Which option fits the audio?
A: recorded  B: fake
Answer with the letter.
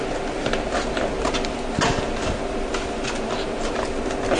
A